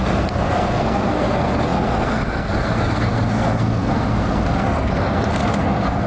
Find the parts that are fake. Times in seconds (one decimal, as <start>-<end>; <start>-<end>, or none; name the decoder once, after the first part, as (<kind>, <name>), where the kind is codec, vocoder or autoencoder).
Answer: 0.0-6.1 (codec, SNAC)